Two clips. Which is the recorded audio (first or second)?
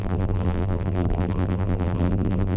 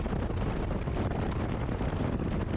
second